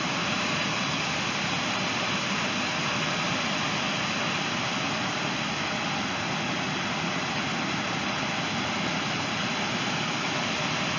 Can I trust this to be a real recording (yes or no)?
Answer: yes